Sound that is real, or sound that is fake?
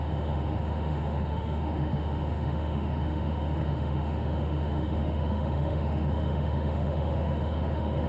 fake